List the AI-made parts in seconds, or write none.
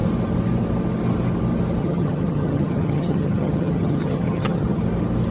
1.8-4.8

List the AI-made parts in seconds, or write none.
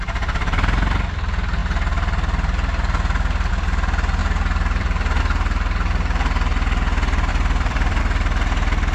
4.2-5.2; 7.3-8.0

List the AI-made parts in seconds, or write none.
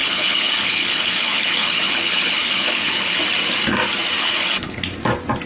0.0-3.2; 4.2-4.8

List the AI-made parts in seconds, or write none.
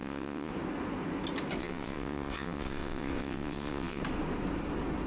0.0-0.5; 1.6-4.0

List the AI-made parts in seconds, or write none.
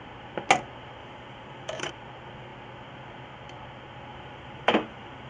1.0-1.9; 4.1-5.3